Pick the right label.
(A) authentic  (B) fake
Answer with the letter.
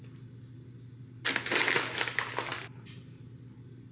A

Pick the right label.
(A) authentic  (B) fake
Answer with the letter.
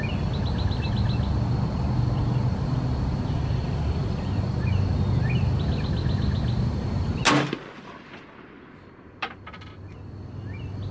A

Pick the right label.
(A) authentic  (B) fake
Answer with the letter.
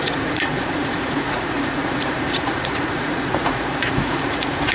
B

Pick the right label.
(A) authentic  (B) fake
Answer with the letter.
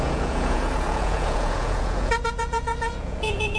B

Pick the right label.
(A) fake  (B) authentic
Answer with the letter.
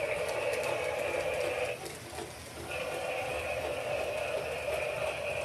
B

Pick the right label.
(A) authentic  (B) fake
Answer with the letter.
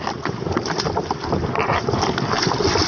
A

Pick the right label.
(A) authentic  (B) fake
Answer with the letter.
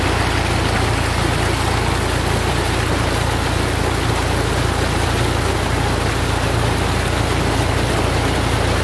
A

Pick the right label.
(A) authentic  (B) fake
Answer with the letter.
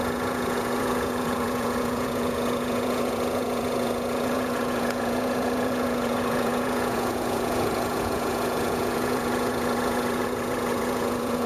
B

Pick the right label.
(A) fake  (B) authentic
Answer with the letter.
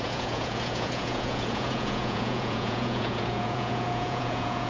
A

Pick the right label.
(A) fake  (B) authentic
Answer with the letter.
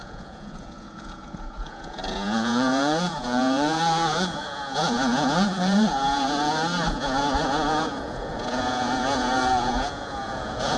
A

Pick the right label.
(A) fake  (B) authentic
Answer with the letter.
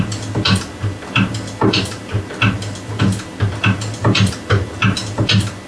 B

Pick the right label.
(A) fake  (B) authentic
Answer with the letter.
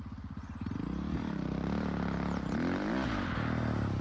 B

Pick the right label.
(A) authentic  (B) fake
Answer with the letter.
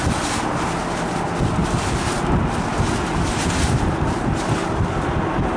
A